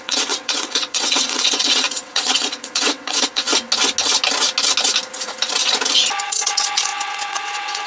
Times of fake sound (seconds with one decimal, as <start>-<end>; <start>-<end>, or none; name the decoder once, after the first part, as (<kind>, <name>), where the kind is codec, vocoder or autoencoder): 0.0-3.5 (vocoder, WaveNeXt); 6.2-7.9

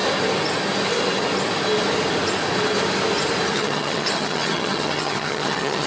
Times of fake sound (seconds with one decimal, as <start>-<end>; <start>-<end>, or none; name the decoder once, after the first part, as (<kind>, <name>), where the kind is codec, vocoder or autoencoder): 3.5-5.9 (vocoder, HiFi-GAN)